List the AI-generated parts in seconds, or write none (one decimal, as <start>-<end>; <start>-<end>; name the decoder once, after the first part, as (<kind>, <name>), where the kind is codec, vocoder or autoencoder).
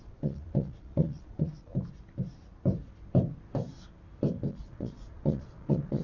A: 0.0-1.7 (vocoder, Vocos); 4.5-6.0